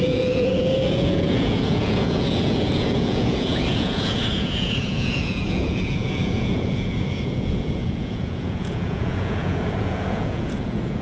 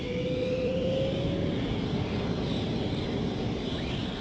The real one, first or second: second